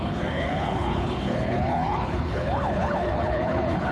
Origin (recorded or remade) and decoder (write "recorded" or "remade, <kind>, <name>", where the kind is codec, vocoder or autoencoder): remade, codec, HILCodec